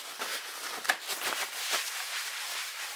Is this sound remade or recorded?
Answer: recorded